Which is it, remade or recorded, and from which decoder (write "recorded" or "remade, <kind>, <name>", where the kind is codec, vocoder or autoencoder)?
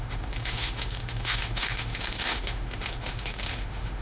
remade, autoencoder, DAC-VAE